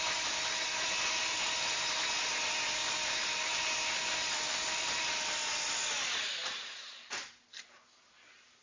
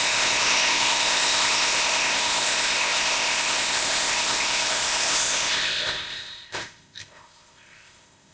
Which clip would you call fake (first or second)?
second